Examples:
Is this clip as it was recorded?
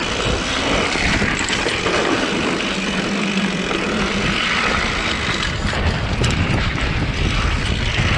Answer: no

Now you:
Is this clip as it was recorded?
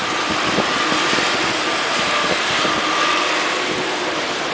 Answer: no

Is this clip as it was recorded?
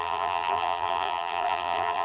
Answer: no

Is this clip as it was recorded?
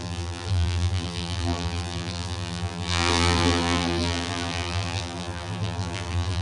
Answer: no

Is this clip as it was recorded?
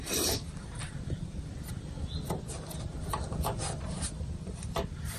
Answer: no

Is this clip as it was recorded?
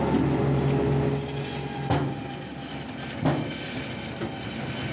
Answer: yes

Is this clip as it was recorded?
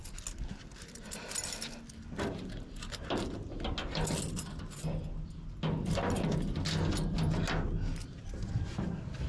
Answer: yes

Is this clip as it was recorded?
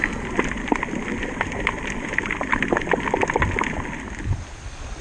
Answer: yes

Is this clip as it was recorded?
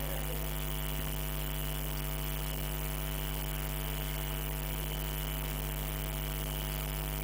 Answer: yes